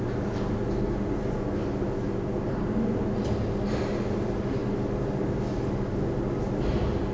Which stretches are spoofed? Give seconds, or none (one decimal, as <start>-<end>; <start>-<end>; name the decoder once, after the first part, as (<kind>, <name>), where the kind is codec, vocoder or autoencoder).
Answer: none